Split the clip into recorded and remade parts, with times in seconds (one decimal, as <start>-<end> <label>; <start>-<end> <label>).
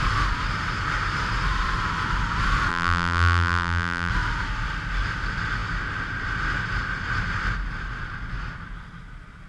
0.0-2.7 recorded; 2.7-4.1 remade; 4.1-9.5 recorded